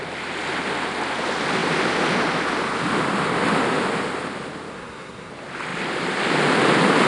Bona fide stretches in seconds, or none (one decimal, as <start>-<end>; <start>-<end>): 0.0-4.7; 5.3-7.1